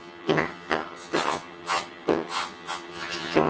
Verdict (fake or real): fake